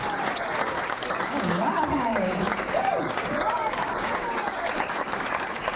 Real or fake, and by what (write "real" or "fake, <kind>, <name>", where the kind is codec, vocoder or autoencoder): fake, codec, DAC